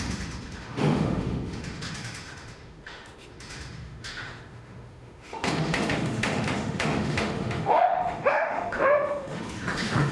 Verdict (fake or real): fake